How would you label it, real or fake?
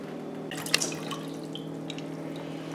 real